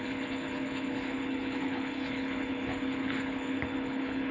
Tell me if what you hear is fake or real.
fake